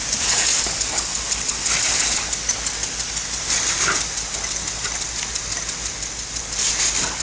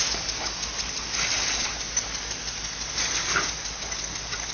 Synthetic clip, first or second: first